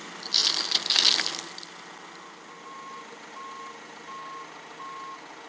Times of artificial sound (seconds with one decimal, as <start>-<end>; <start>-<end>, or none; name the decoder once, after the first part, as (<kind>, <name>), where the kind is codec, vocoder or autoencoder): none